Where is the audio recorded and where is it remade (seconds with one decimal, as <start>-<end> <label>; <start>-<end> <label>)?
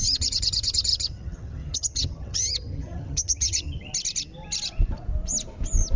0.0-3.9 remade; 3.9-6.0 recorded